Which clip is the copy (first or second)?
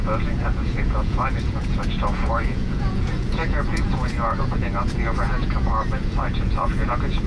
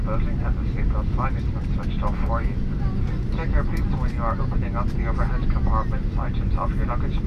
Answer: first